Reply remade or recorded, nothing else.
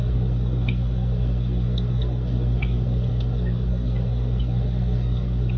remade